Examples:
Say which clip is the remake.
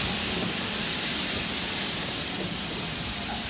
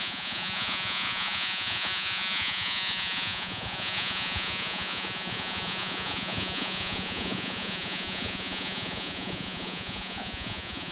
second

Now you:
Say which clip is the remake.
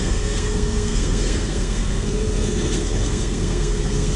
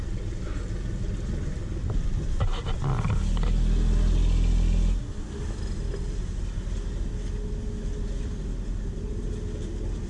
first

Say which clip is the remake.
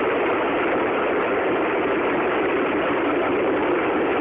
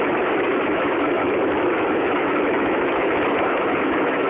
second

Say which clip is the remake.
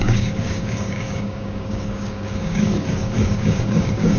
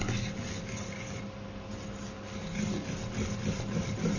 first